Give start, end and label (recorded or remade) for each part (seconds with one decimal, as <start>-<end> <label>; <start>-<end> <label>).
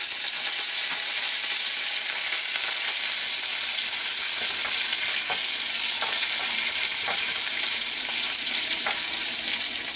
0.0-6.4 recorded; 6.4-9.4 remade; 9.4-10.0 recorded